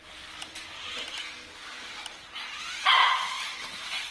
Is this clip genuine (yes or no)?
yes